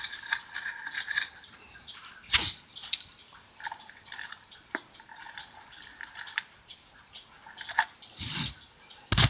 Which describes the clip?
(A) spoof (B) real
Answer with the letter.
B